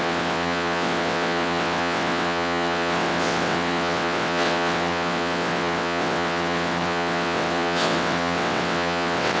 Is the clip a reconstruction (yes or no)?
yes